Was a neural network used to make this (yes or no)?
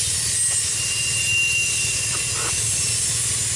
no